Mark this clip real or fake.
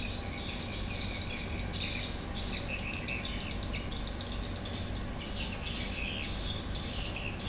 real